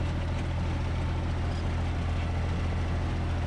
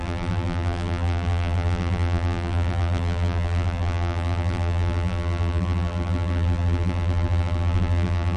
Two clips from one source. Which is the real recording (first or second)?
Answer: first